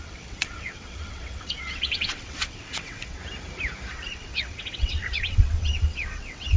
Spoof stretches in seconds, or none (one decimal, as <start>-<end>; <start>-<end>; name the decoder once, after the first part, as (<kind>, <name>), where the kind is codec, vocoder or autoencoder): 0.0-3.2 (vocoder, WaveNeXt); 3.9-6.6